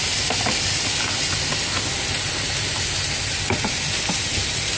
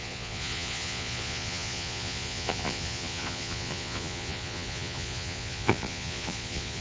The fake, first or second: second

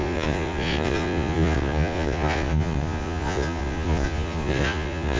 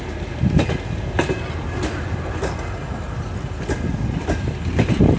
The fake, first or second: first